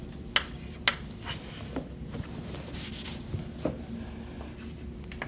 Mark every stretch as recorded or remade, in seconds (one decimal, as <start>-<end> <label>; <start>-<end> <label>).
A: 0.0-0.9 recorded; 0.9-2.0 remade; 2.0-2.9 recorded; 2.9-3.7 remade; 3.7-5.3 recorded